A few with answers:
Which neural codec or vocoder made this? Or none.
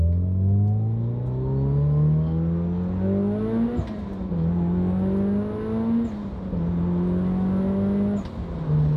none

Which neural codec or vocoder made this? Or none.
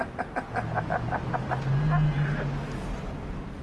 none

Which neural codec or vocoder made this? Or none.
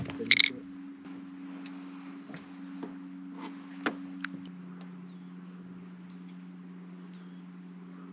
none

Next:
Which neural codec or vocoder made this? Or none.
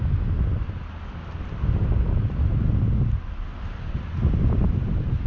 none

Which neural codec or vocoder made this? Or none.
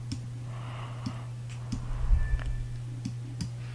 none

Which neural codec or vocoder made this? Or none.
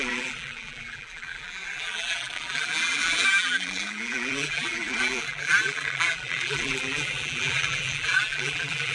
vocoder, BigVGAN v2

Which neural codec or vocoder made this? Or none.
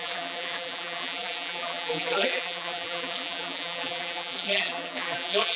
vocoder, BigVGAN v2